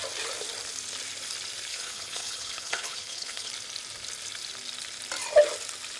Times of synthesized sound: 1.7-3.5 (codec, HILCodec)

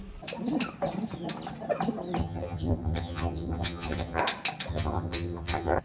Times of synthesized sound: 2.2-4.2 (vocoder, HiFi-GAN); 4.7-5.8

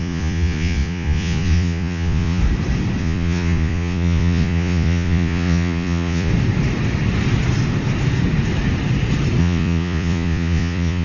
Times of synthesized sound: 0.0-2.4 (vocoder, Vocos); 3.0-6.3; 9.4-11.0

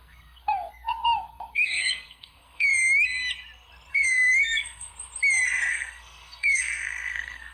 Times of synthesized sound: 0.0-2.7 (codec, SNAC); 3.9-4.9; 5.7-7.5

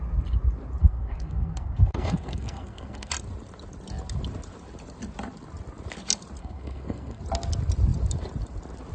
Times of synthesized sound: 0.8-3.1 (codec, SNAC); 6.4-7.2

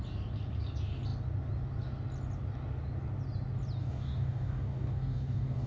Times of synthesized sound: 3.8-5.7 (codec, DAC)

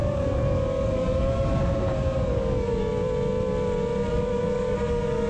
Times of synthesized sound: 0.0-2.9 (codec, DAC); 4.1-5.3